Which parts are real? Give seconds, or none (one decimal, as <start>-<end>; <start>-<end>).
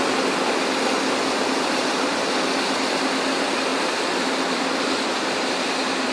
0.0-6.1